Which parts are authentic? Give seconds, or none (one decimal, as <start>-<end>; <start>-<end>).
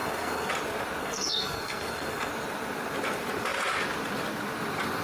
0.5-1.0; 2.3-5.0